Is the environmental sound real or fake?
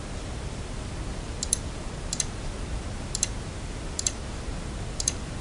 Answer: fake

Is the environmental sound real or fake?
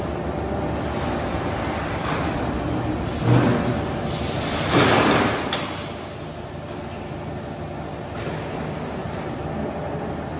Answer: real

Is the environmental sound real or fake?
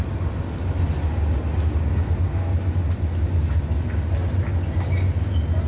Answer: real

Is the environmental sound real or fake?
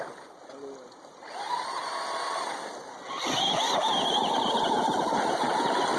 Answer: real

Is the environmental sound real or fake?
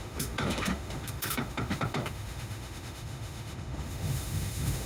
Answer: fake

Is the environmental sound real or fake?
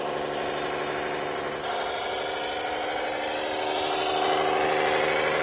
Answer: real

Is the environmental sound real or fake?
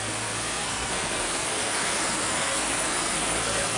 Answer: fake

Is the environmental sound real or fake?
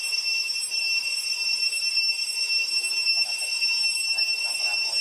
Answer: real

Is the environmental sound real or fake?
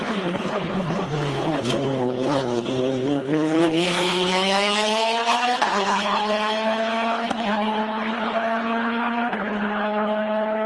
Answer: fake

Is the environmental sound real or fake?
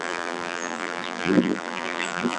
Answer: fake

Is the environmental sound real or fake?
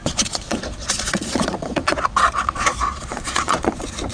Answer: fake